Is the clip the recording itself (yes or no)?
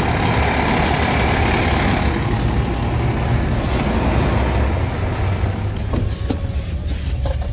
yes